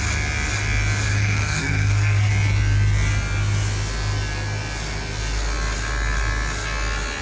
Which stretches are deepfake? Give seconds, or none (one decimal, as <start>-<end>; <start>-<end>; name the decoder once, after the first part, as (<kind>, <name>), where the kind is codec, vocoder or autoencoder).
1.1-2.3 (codec, SNAC)